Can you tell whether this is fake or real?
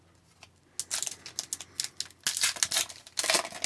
real